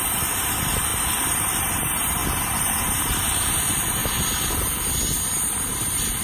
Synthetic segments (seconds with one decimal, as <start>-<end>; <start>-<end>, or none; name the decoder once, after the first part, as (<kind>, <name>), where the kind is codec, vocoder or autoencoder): 0.0-4.0 (vocoder, BigVGAN v2); 5.5-6.2